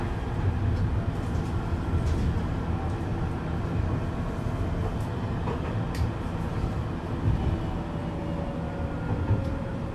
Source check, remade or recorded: recorded